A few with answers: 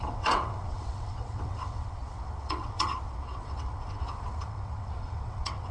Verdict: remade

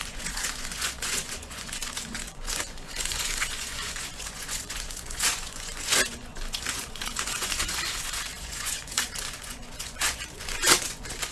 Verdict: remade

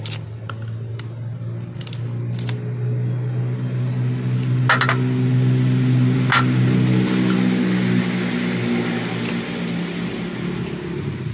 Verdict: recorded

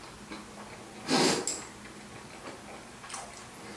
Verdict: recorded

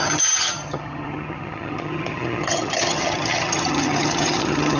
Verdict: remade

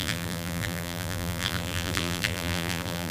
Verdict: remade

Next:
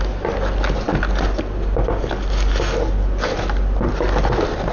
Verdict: recorded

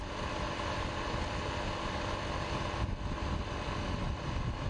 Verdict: recorded